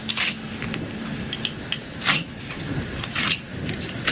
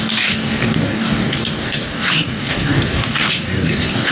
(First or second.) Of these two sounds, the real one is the first